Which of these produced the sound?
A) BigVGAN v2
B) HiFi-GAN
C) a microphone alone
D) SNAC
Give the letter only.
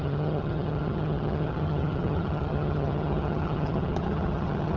B